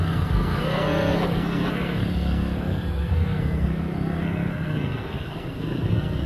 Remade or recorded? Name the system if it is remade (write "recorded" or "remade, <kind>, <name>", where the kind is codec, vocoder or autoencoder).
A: remade, codec, SNAC